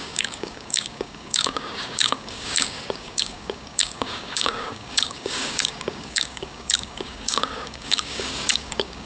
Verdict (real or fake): fake